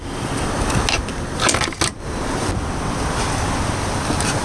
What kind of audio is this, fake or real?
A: real